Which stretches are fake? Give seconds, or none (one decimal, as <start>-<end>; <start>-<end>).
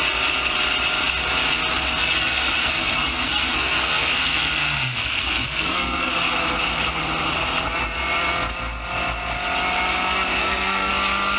2.0-6.1; 10.4-10.9